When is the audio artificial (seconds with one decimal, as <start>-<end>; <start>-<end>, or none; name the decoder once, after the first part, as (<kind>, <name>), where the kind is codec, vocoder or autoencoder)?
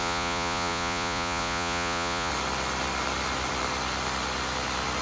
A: 0.0-2.3 (vocoder, Vocos)